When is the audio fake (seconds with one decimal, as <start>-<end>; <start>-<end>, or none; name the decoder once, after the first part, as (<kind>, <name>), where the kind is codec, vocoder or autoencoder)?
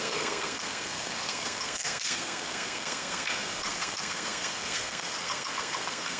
0.0-6.2 (codec, SNAC)